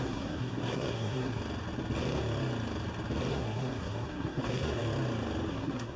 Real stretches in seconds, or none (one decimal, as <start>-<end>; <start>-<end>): 1.4-3.3; 4.8-5.5